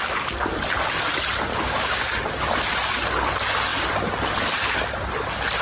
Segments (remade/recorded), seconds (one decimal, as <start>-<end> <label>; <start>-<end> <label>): 0.0-1.5 recorded; 1.5-2.2 remade; 2.2-5.6 recorded

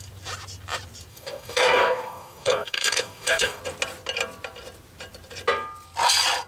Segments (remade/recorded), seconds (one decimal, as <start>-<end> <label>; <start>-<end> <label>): 0.0-1.1 recorded; 1.1-3.6 remade; 3.6-6.5 recorded

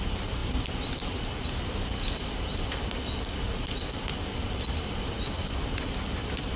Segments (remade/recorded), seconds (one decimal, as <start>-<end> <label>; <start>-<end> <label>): 0.0-6.6 recorded

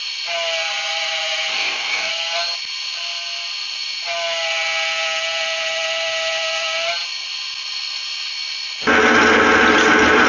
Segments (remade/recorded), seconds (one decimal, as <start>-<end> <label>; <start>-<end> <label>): 0.0-1.5 recorded; 1.5-2.1 remade; 2.1-10.3 recorded